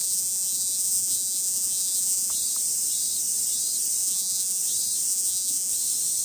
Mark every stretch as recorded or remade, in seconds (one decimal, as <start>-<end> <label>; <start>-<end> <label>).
0.0-2.3 remade; 2.3-4.0 recorded; 4.0-4.6 remade; 4.6-5.1 recorded; 5.1-5.7 remade; 5.7-6.2 recorded